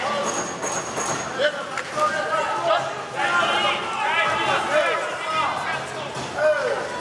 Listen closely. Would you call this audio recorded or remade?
recorded